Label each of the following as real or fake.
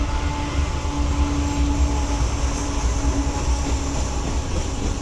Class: real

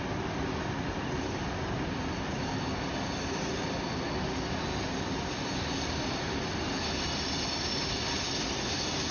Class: real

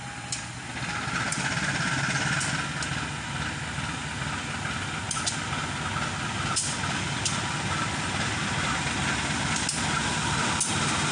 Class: real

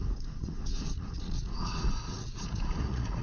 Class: fake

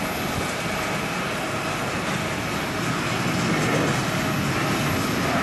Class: real